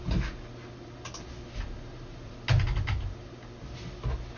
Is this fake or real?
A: real